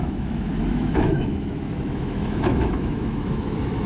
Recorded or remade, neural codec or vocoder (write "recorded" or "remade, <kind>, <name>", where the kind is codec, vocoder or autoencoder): remade, autoencoder, DAC-VAE